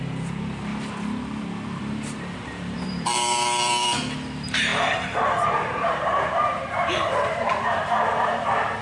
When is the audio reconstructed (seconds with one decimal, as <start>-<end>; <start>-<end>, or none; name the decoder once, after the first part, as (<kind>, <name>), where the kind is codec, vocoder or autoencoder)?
0.0-0.7 (vocoder, BigVGAN v2); 1.8-8.8